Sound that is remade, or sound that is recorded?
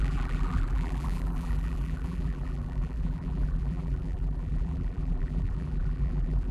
remade